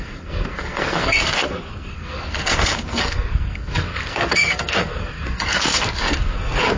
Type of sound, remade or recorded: remade